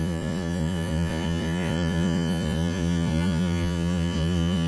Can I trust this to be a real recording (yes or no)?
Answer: no